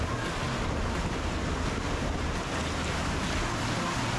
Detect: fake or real real